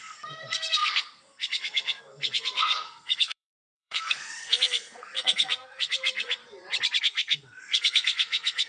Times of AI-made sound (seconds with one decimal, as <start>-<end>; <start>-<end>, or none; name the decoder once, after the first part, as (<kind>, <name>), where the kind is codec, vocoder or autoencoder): 0.0-6.4 (codec, SNAC); 7.0-8.7